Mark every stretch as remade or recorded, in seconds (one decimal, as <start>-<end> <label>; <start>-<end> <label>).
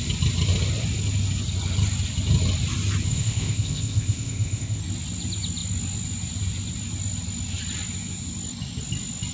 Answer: 0.0-3.1 recorded; 3.1-4.8 remade; 4.8-9.3 recorded